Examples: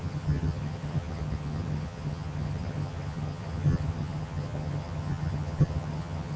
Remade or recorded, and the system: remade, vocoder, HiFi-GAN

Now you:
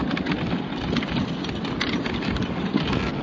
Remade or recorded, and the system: recorded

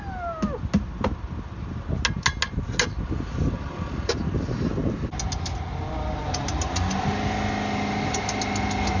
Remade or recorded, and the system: recorded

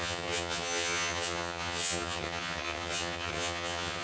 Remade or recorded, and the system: remade, vocoder, HiFi-GAN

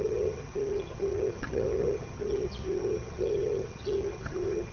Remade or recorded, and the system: remade, vocoder, HiFi-GAN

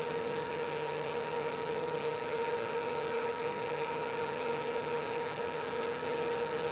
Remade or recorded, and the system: remade, vocoder, HiFi-GAN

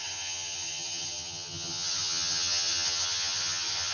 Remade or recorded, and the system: remade, vocoder, HiFi-GAN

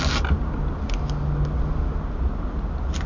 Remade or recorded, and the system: recorded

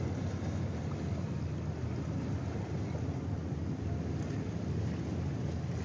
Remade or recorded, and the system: recorded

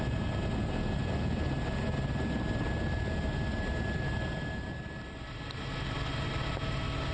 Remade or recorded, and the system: recorded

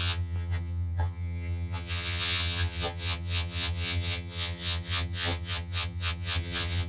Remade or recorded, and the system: remade, vocoder, HiFi-GAN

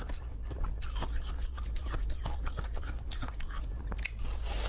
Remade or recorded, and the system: recorded